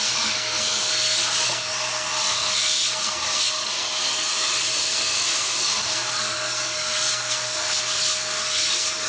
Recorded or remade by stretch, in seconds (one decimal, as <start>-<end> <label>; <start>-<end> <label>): 0.0-4.3 remade; 4.3-4.8 recorded; 4.8-9.1 remade

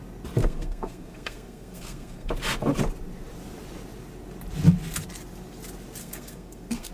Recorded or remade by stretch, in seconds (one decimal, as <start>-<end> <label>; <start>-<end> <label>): 0.0-0.4 recorded; 0.4-2.3 remade; 2.3-6.0 recorded; 6.0-6.9 remade